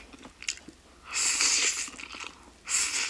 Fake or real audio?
real